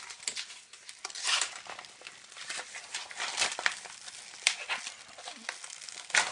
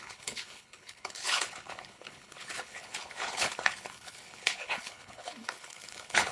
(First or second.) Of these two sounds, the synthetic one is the second